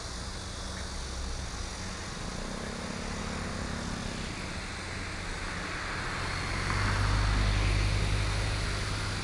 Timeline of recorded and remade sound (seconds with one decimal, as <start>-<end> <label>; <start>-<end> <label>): 0.0-9.2 recorded